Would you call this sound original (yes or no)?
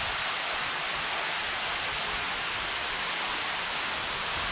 no